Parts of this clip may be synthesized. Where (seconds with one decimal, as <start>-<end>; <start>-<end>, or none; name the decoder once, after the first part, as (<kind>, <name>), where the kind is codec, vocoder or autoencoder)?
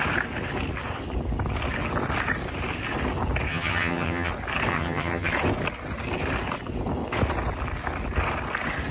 3.5-4.3 (vocoder, HiFi-GAN); 4.7-5.3